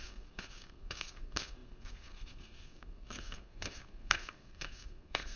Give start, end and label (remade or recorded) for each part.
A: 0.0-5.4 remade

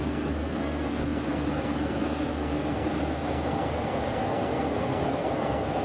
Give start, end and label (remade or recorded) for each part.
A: 0.0-5.8 remade

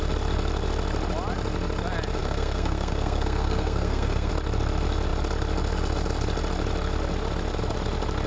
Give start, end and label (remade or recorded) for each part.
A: 0.0-2.2 recorded; 2.2-4.3 remade; 4.3-8.3 recorded